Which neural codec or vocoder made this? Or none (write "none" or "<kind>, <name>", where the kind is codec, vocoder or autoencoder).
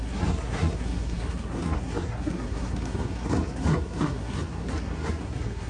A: codec, SNAC